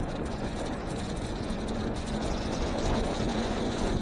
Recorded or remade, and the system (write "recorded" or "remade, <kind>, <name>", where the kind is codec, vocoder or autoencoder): remade, vocoder, Vocos